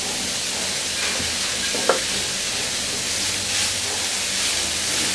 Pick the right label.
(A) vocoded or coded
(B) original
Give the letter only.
B